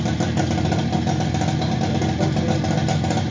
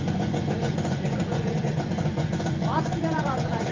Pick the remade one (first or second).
second